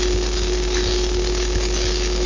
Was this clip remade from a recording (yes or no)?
no